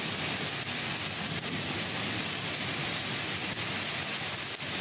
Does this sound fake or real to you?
real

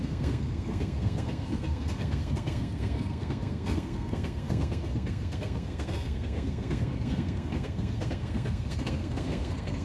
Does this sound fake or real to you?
fake